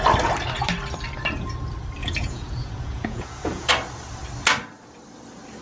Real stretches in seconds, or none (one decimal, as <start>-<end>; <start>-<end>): 0.0-2.0; 3.7-5.6